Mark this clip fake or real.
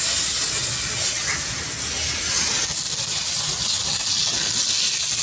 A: real